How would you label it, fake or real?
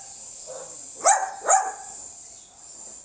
real